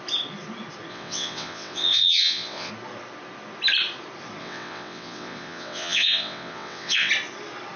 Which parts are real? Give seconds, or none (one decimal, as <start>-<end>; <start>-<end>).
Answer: 0.0-0.9; 2.7-4.4; 7.1-7.8